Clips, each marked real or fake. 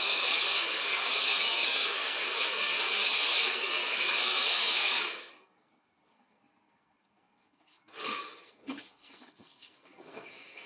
fake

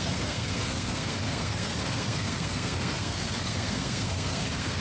fake